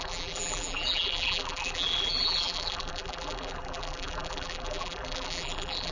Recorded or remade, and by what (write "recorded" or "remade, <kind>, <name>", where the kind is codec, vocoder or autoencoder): remade, vocoder, BigVGAN v2